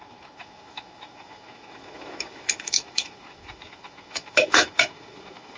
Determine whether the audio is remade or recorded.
remade